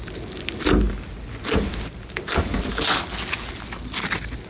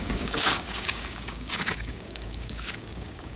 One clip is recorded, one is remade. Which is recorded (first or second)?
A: first